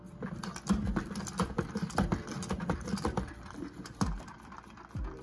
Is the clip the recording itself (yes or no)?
no